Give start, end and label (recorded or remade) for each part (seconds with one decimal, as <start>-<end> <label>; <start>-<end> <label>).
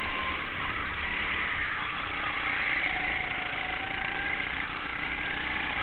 0.0-0.8 remade; 0.8-3.8 recorded; 3.8-4.9 remade; 4.9-5.8 recorded